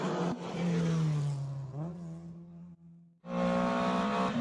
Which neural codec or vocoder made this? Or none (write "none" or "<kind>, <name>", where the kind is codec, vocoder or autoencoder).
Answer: none